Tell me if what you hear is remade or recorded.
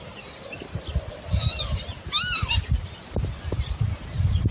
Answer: recorded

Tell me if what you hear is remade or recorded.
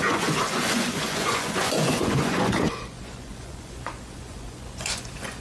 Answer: remade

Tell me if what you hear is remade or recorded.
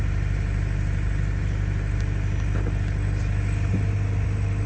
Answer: recorded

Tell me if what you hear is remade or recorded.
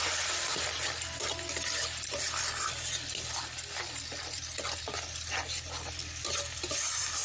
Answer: recorded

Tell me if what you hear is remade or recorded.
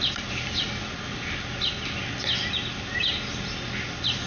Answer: recorded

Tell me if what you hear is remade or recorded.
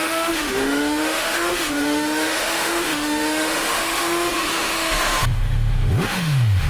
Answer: remade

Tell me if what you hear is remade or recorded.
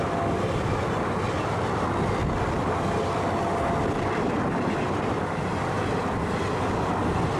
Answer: recorded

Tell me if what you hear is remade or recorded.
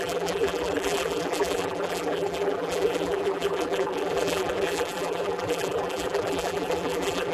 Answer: remade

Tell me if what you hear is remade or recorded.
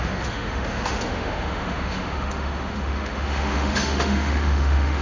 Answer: remade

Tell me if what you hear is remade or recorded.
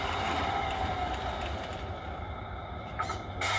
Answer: recorded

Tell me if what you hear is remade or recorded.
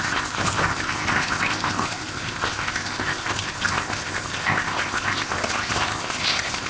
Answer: remade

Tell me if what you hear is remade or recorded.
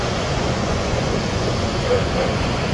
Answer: remade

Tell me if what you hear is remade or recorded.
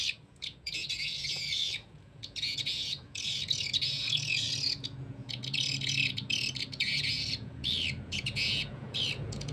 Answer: remade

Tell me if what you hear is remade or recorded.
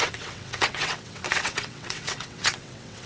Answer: remade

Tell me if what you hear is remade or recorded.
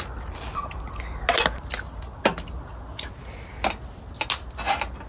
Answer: recorded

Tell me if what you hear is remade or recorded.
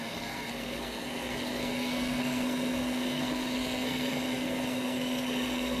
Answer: remade